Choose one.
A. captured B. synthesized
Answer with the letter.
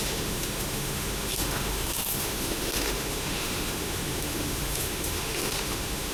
B